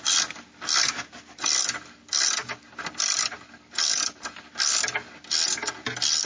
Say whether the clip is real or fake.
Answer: real